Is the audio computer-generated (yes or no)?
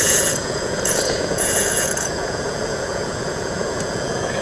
yes